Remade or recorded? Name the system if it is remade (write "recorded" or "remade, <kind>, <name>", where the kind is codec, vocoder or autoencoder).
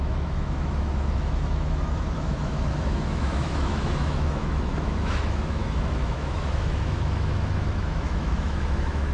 remade, autoencoder, DAC-VAE